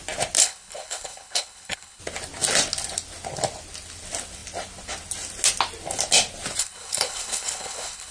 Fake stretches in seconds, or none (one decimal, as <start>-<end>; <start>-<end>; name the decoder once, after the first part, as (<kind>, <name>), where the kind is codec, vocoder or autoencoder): 0.4-2.0 (codec, HILCodec); 6.6-8.1